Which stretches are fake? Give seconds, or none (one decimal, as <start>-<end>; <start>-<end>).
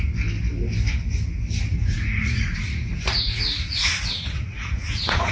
1.7-5.3